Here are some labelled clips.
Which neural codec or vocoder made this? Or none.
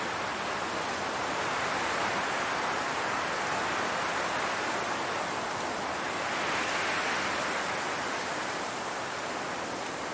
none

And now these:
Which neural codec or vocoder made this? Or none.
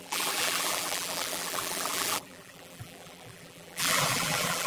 vocoder, BigVGAN v2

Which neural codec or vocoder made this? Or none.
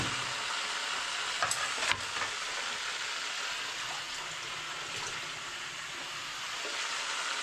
none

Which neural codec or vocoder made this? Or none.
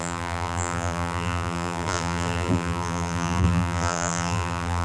vocoder, BigVGAN v2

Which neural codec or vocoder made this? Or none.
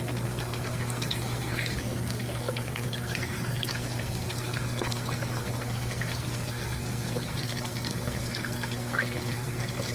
codec, SNAC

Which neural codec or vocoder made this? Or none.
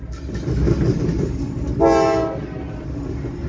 none